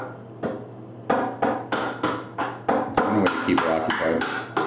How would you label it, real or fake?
real